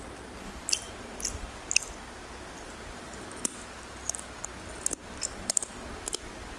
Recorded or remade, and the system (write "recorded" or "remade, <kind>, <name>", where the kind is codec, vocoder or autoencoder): recorded